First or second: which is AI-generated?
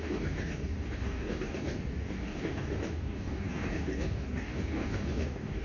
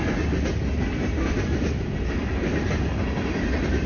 first